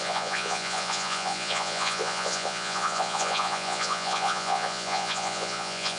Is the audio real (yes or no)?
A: no